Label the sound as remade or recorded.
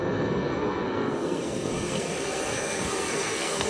remade